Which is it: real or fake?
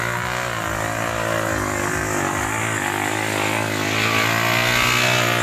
real